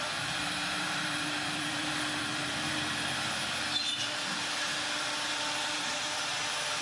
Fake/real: fake